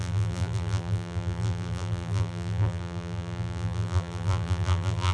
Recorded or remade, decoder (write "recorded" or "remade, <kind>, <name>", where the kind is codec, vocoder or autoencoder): remade, vocoder, BigVGAN v2